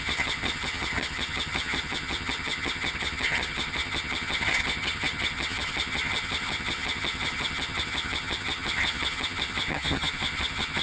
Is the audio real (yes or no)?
no